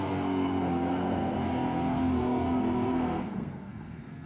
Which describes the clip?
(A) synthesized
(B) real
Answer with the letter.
A